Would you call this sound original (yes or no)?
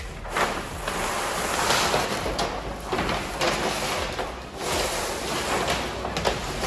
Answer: yes